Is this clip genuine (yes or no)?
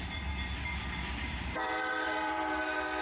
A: no